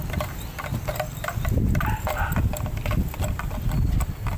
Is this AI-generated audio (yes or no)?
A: no